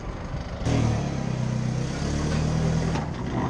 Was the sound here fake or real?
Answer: real